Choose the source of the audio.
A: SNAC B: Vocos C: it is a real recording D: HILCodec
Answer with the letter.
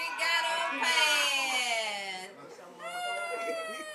C